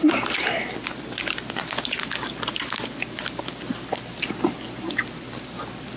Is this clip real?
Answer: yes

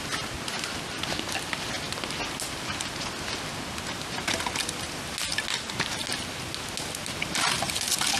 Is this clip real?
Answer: yes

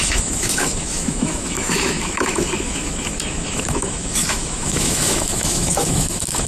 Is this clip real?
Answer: no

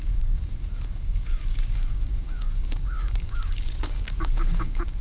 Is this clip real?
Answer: no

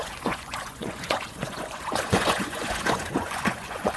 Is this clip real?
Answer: no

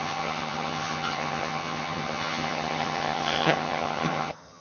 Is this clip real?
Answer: no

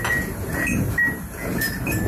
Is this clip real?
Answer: yes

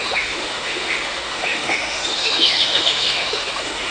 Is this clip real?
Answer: no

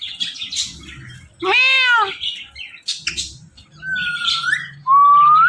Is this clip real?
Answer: yes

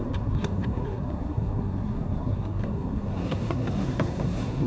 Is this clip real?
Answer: no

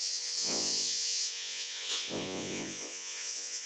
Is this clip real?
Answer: no